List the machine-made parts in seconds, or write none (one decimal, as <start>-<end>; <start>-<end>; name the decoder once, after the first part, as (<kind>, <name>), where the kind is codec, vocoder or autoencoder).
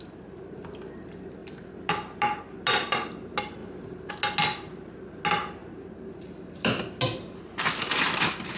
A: none